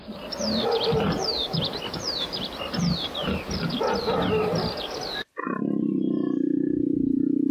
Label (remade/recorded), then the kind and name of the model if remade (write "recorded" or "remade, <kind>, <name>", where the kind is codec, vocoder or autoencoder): recorded